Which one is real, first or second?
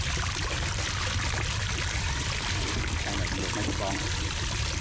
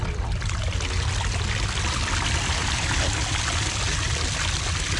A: second